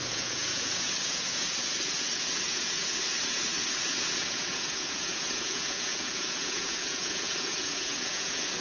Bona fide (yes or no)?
no